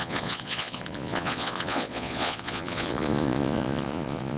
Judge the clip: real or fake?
fake